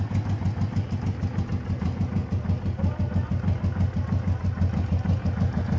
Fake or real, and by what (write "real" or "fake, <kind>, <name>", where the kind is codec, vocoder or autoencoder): real